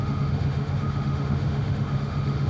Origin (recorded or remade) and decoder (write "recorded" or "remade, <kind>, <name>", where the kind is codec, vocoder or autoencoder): remade, autoencoder, DAC-VAE